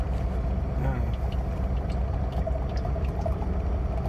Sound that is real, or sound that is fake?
real